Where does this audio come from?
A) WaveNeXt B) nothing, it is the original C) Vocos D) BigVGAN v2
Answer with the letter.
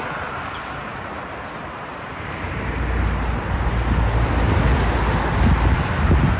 B